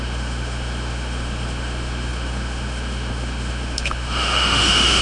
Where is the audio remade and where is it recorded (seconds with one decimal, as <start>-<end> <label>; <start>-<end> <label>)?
0.0-5.0 remade